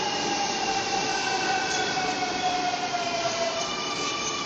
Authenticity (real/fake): fake